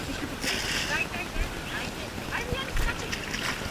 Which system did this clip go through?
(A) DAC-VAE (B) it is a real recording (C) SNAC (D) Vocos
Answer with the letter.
B